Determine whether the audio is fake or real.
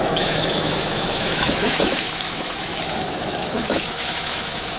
fake